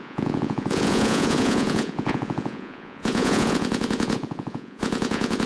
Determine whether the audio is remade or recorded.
remade